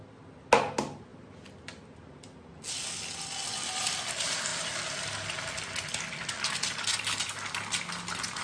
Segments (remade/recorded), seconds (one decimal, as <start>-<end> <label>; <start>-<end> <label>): 0.0-8.4 recorded